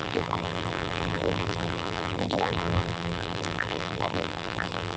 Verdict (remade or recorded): remade